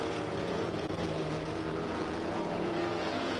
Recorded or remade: remade